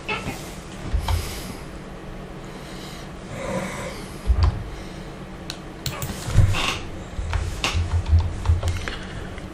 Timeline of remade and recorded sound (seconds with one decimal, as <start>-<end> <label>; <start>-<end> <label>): 0.0-0.8 recorded; 0.8-1.5 remade; 1.5-7.3 recorded; 7.3-8.0 remade; 8.0-9.5 recorded